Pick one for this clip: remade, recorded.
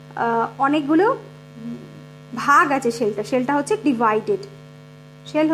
recorded